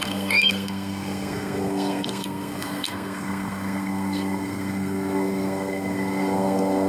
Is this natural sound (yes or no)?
no